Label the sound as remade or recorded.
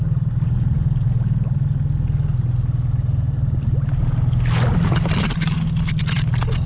recorded